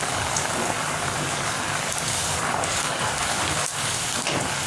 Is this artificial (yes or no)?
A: yes